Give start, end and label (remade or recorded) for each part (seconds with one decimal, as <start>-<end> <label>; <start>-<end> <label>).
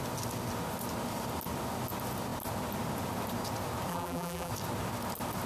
0.0-3.9 recorded; 3.9-4.5 remade; 4.5-5.5 recorded